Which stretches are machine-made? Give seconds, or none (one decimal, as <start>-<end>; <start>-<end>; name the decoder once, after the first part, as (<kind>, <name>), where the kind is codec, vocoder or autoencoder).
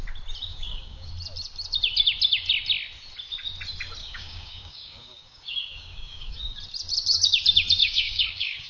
0.5-1.1 (codec, DAC); 4.0-6.6; 7.8-8.7